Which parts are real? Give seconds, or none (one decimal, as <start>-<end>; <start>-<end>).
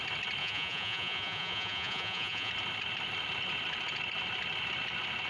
0.0-0.4; 2.5-5.3